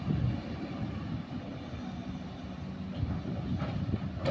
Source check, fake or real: real